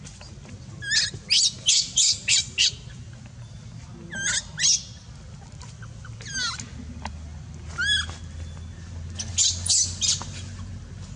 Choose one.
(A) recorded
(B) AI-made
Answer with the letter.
A